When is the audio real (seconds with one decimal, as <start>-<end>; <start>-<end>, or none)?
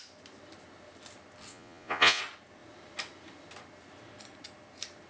0.0-1.5; 2.2-5.1